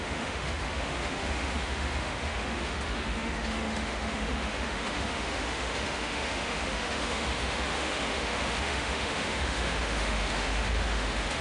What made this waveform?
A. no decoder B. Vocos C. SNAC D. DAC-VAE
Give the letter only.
D